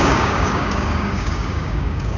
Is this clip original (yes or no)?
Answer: no